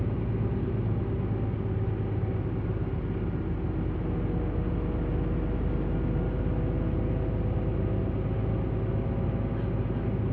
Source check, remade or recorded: recorded